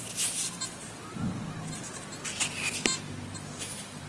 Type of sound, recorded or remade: recorded